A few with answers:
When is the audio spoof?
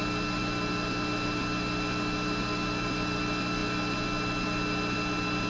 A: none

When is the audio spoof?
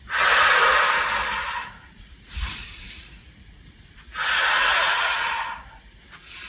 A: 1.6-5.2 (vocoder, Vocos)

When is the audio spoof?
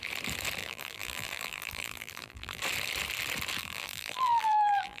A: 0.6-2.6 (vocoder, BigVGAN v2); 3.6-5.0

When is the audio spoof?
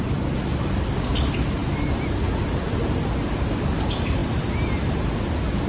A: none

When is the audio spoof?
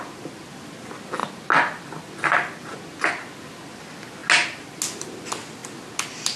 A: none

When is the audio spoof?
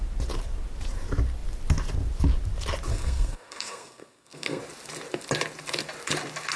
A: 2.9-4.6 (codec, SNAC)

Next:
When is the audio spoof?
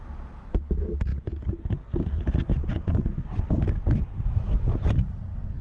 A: 2.5-3.5 (vocoder, WaveNeXt)